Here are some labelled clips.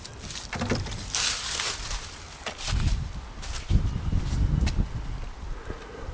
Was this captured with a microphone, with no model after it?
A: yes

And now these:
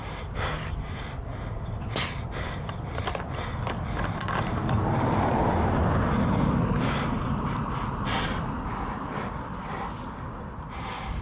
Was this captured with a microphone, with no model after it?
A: yes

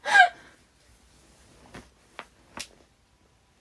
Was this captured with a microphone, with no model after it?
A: yes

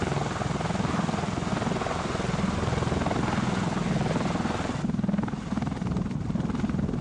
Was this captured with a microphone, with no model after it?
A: yes